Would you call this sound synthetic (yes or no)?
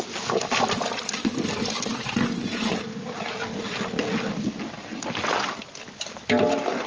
no